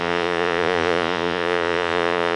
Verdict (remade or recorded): remade